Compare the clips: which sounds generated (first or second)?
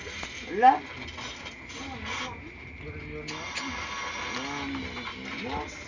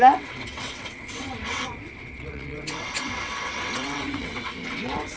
second